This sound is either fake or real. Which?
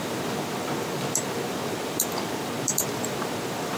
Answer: fake